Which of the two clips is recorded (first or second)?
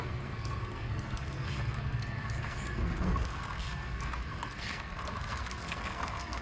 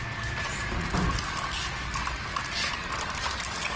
second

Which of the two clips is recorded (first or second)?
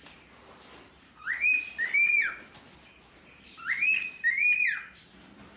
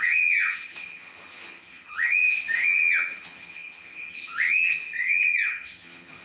first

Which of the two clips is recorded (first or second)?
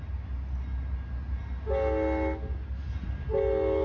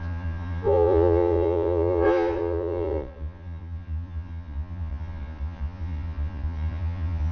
first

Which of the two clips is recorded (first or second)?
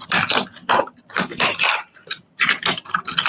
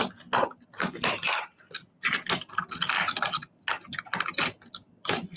second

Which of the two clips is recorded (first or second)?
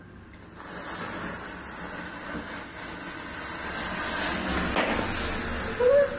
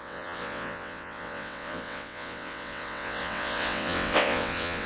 first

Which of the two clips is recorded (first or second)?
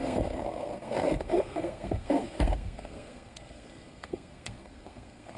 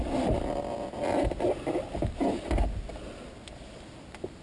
second